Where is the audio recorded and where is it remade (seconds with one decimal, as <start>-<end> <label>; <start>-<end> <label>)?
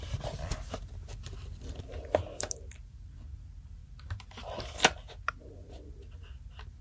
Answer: 0.0-6.8 recorded